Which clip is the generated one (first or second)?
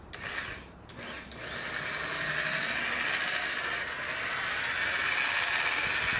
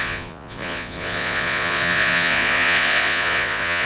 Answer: second